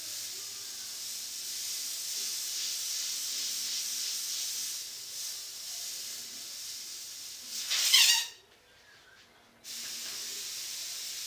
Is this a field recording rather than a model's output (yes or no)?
yes